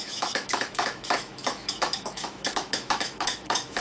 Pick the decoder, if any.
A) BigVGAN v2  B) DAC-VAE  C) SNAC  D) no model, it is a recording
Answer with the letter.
B